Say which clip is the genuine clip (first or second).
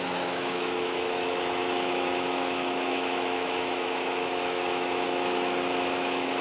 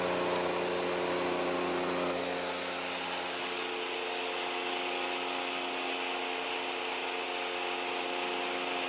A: second